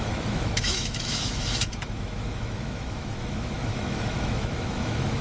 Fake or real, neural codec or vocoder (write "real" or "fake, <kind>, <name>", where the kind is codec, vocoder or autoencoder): fake, autoencoder, DAC-VAE